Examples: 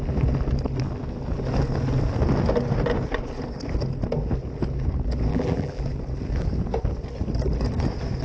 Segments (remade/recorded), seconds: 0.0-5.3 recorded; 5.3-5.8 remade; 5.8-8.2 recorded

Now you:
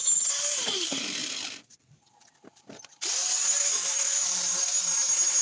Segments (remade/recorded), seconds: 0.0-1.2 recorded; 1.2-3.3 remade; 3.3-5.4 recorded